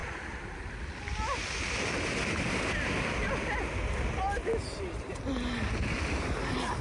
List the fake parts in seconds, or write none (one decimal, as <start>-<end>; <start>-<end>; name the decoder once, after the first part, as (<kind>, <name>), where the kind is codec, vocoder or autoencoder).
none